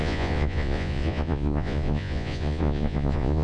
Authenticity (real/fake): fake